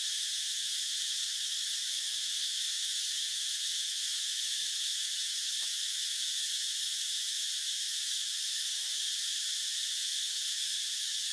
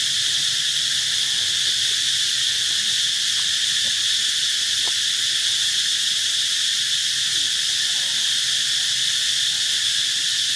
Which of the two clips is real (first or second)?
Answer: second